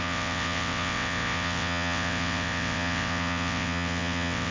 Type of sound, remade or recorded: remade